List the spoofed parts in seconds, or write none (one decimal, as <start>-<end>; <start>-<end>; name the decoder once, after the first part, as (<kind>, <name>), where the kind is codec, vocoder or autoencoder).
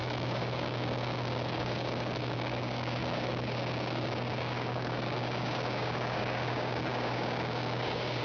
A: 0.0-8.2 (codec, DAC)